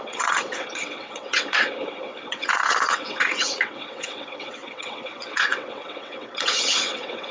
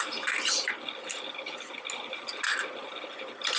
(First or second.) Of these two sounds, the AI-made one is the first